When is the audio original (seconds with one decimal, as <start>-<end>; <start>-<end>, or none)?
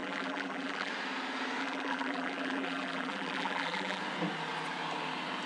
0.9-1.6; 4.0-5.5